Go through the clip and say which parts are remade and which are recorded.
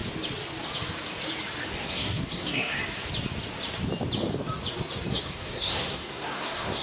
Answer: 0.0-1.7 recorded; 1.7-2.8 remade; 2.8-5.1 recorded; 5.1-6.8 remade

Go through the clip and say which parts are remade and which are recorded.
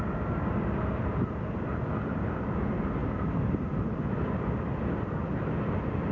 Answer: 0.0-6.1 recorded